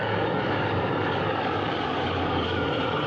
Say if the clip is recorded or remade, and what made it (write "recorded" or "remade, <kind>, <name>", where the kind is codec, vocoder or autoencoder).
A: remade, codec, DAC